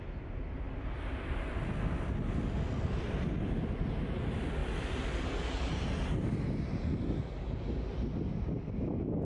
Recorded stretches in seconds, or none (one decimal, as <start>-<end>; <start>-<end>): 0.0-9.2